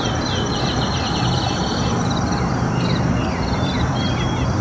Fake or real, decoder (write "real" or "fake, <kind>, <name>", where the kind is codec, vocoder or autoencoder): fake, vocoder, BigVGAN v2